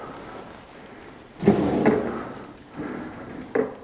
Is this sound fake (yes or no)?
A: no